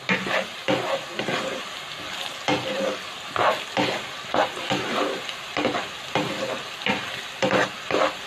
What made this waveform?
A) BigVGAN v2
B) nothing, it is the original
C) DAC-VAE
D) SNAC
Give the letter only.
B